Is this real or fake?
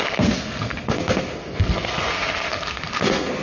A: fake